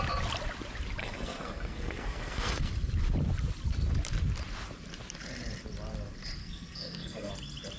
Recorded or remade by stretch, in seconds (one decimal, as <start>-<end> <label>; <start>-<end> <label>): 0.0-1.0 recorded; 1.0-2.7 remade; 2.7-6.4 recorded; 6.4-7.3 remade; 7.3-7.8 recorded